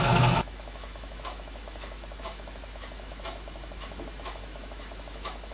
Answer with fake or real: fake